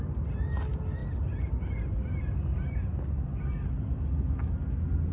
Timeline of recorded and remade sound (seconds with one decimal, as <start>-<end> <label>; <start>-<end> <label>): 0.0-5.1 recorded